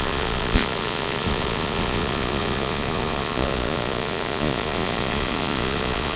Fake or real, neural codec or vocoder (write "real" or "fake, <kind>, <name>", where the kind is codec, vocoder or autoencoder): fake, vocoder, Vocos